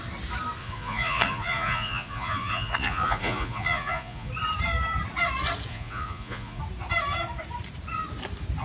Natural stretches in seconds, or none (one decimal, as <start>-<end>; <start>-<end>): 0.0-0.6; 4.3-5.7; 6.6-8.6